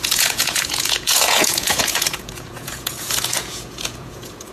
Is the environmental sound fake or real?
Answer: fake